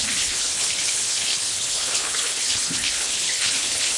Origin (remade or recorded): remade